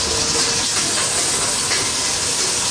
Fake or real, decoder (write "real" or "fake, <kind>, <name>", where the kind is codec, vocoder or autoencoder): real